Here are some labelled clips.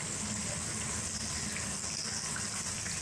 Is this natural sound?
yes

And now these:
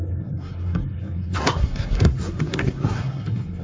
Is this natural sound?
no